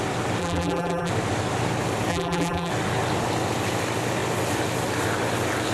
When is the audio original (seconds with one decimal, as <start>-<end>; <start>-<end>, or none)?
0.0-0.4; 1.1-2.1; 2.7-5.7